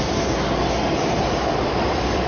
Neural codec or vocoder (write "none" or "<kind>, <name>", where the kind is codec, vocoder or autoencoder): vocoder, BigVGAN v2